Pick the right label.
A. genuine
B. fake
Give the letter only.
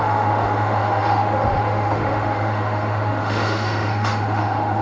B